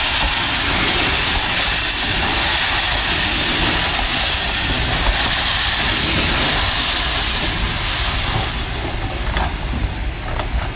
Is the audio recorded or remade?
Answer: recorded